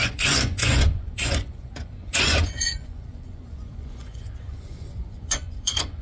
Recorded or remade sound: remade